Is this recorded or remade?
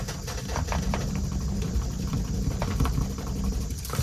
remade